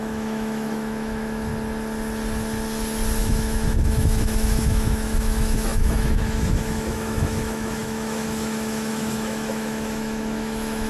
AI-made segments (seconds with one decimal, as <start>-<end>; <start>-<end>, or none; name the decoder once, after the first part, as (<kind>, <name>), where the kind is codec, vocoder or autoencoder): 0.0-1.5 (autoencoder, DAC-VAE); 3.2-10.9

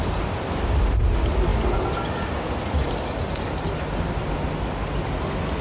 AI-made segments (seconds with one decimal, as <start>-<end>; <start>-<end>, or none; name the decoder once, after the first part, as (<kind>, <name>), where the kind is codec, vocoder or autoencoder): none

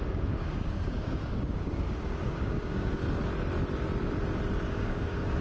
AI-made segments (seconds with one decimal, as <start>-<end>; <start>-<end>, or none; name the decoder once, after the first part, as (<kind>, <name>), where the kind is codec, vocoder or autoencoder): 0.0-2.9 (codec, DAC); 4.7-5.4

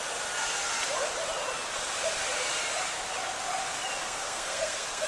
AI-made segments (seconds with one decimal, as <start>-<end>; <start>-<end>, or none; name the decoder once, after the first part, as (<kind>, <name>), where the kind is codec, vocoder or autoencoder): 4.0-5.1 (codec, SNAC)

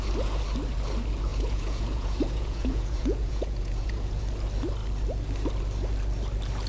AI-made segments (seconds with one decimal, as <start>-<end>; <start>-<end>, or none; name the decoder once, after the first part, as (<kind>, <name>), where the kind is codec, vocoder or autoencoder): 1.3-4.2 (vocoder, Vocos)

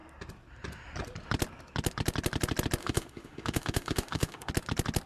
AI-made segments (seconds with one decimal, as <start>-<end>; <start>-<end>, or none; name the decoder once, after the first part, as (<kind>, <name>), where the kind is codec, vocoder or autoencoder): 2.8-4.5 (autoencoder, DAC-VAE)

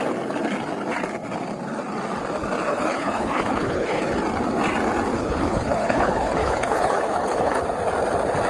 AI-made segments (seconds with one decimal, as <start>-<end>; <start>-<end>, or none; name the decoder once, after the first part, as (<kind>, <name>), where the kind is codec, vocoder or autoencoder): 2.7-4.0 (codec, HILCodec); 5.1-7.6

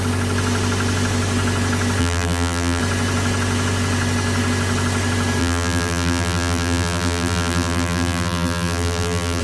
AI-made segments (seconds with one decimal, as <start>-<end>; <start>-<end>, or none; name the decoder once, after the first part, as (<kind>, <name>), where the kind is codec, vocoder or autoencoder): 2.0-2.8 (vocoder, BigVGAN v2); 5.4-9.4